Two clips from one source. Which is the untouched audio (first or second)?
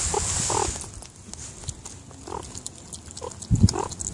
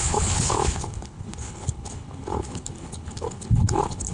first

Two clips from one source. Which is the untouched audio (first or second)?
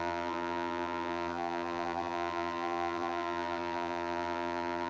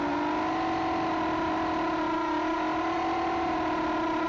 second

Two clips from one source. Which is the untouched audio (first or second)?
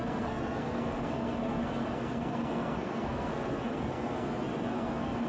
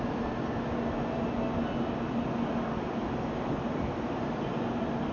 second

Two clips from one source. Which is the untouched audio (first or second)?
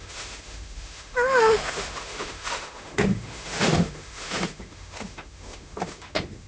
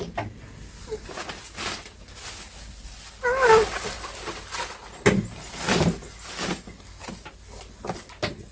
second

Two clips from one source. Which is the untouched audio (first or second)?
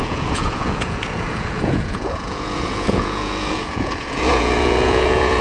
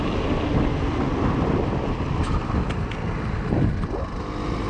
second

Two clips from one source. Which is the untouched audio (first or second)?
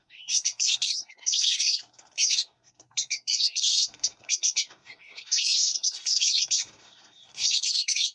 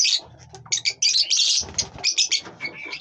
second